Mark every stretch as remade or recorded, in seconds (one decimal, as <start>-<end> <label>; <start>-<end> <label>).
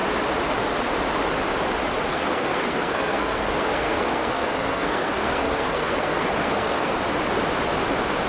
0.0-2.1 recorded; 2.1-7.0 remade; 7.0-8.3 recorded